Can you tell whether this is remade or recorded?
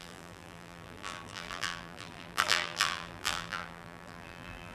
remade